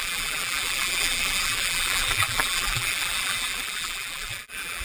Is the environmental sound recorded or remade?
remade